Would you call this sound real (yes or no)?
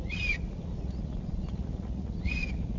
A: no